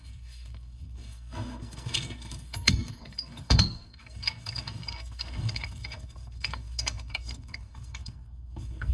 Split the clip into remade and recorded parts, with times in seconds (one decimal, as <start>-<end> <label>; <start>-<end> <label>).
0.0-8.9 remade

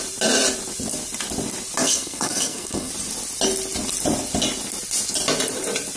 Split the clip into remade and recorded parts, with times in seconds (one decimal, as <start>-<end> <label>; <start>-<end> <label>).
0.0-1.8 recorded; 1.8-2.9 remade; 2.9-6.0 recorded

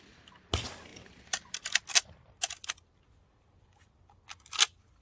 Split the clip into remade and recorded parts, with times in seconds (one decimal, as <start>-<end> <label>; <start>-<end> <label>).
0.0-5.0 recorded